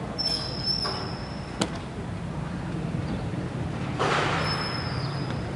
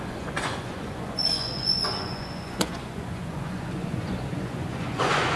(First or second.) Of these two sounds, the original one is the first